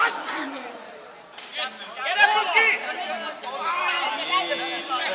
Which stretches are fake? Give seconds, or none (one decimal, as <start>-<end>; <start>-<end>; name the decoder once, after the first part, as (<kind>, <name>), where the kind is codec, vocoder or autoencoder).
none